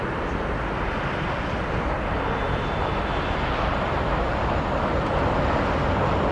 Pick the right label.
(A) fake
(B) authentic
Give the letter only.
B